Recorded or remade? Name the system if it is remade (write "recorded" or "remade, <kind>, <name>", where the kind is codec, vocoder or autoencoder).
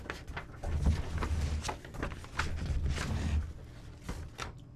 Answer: recorded